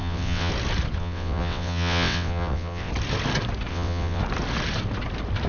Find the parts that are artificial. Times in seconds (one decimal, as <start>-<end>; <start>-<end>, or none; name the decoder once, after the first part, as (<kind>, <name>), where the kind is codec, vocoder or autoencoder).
0.0-0.5 (vocoder, WaveNeXt); 1.0-2.9; 3.7-4.2